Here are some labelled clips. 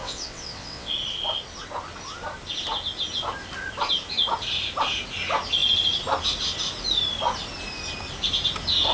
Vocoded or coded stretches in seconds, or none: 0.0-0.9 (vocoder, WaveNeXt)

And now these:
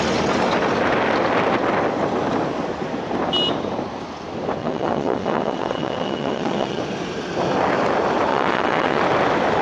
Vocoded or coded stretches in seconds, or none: 4.6-6.8 (vocoder, WaveNeXt); 8.3-9.0

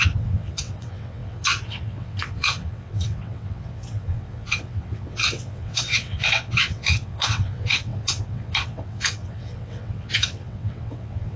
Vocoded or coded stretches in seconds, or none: 0.0-11.4 (vocoder, WaveNeXt)